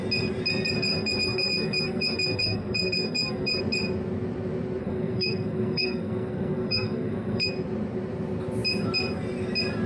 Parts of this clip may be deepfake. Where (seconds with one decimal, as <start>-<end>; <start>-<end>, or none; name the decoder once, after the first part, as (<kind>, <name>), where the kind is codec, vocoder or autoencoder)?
0.9-3.6 (codec, SNAC); 4.8-7.5